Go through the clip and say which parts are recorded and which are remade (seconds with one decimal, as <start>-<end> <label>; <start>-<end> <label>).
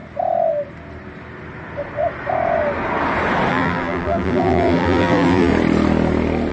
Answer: 0.0-3.5 recorded; 3.5-5.5 remade; 5.5-6.5 recorded